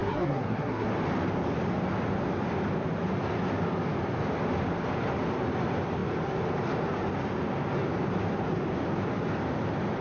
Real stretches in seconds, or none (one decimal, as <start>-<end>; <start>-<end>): 0.9-10.0